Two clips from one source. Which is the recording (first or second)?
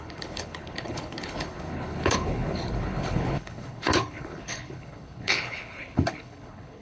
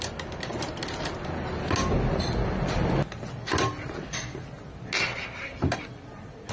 second